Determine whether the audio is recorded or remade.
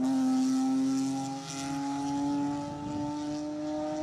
recorded